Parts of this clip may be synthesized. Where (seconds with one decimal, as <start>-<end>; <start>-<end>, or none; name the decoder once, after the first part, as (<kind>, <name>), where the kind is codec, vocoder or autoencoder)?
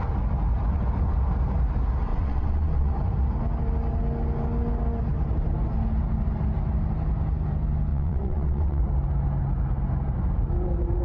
2.1-2.9 (vocoder, WaveNeXt); 7.9-8.8